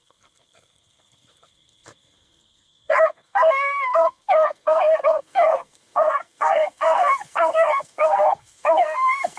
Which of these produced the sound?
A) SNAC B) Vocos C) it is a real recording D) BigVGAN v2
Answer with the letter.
A